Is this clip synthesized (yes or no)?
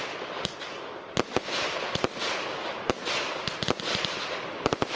no